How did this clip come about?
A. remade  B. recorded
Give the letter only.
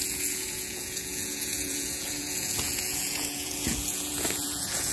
A